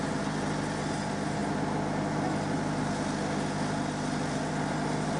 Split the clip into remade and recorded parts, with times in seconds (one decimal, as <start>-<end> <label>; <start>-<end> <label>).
0.0-5.2 recorded